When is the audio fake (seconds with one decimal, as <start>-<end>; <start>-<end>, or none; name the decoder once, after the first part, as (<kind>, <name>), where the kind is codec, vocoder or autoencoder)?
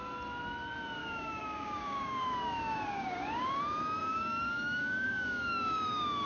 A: 1.0-3.6 (codec, DAC); 4.0-6.3